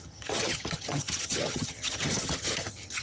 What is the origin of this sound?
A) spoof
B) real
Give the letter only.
A